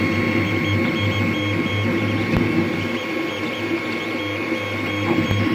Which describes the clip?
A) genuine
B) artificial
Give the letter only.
A